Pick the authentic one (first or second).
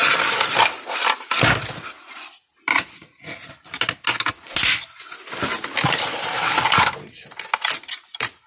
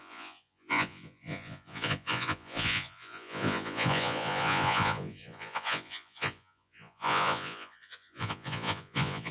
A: first